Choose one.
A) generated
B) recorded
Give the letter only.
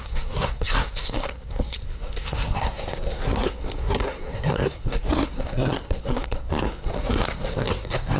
A